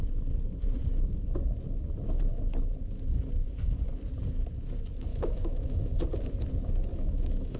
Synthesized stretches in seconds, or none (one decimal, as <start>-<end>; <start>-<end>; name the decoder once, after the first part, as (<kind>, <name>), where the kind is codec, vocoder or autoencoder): 5.1-6.0 (autoencoder, DAC-VAE); 6.9-7.6